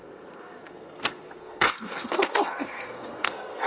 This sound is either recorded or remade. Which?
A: remade